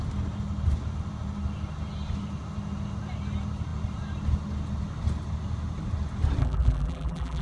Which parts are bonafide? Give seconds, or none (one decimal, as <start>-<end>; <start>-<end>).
0.0-6.4